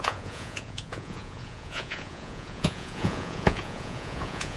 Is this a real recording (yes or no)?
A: no